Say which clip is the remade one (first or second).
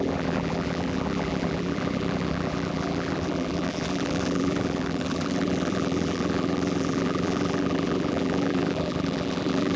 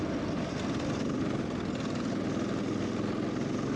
first